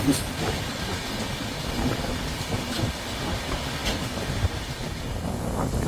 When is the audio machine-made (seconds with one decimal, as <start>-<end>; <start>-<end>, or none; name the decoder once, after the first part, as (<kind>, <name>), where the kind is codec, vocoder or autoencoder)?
none